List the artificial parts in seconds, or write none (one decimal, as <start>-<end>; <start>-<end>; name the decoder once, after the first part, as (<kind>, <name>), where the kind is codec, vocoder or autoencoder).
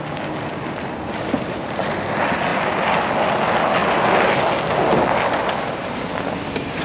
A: none